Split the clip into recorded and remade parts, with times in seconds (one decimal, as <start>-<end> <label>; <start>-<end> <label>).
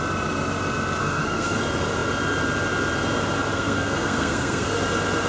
0.0-1.0 recorded; 1.0-1.6 remade; 1.6-3.5 recorded; 3.5-4.8 remade; 4.8-5.3 recorded